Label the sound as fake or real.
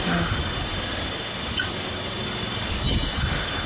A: fake